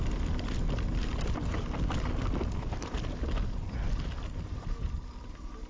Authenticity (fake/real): real